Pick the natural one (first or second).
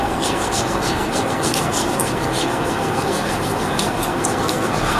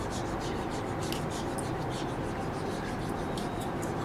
second